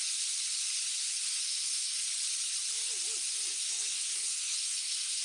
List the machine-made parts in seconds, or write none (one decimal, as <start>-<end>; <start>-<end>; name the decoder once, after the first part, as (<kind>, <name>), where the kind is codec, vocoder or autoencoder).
1.4-2.0 (codec, SNAC); 3.5-5.2

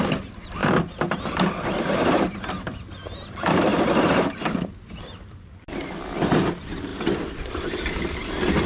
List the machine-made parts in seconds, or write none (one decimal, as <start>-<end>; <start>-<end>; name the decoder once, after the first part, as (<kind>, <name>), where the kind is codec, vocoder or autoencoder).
none

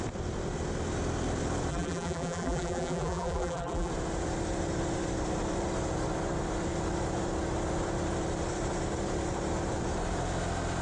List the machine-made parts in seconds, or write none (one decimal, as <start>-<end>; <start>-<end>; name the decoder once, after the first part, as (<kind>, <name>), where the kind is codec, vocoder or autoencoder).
1.7-3.9 (vocoder, BigVGAN v2)

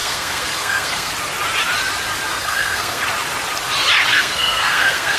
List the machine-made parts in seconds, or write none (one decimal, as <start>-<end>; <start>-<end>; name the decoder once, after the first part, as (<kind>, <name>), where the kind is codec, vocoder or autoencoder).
0.0-1.1 (codec, SNAC); 2.3-3.0; 4.1-5.2

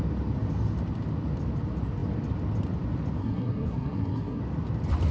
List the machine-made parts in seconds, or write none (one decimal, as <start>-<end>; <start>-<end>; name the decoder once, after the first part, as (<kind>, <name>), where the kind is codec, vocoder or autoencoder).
3.2-4.4 (codec, SNAC)

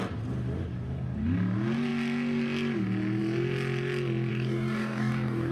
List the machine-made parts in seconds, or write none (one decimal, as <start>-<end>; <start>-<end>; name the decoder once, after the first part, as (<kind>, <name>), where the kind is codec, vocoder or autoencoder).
4.3-5.5 (codec, DAC)